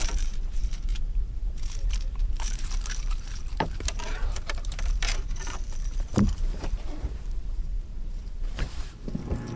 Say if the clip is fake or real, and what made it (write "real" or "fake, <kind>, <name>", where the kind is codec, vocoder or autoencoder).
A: fake, vocoder, BigVGAN v2